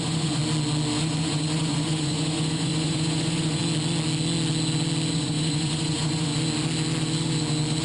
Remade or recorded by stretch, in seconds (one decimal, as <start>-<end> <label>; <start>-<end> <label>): 0.0-0.4 remade; 0.4-1.0 recorded; 1.0-3.6 remade; 3.6-5.1 recorded; 5.1-6.3 remade; 6.3-7.8 recorded